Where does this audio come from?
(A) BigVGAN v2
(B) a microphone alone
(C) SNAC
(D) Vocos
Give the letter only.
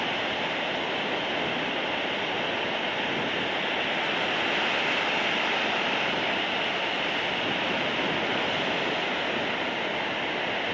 B